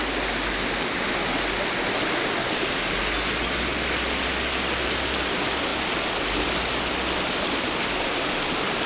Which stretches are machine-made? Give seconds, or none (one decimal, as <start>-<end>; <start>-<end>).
none